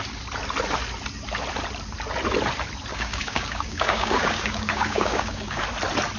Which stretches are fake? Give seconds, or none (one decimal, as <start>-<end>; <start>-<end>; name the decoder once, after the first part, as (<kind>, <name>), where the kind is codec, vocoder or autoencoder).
2.9-5.6 (codec, DAC)